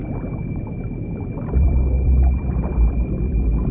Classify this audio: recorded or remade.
remade